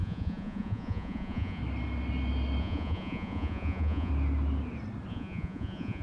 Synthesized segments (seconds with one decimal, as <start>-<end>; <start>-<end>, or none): 0.0-1.6; 2.6-4.1; 5.1-6.0